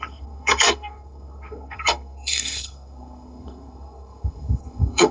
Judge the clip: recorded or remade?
remade